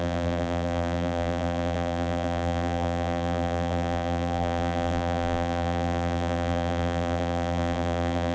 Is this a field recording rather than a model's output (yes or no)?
no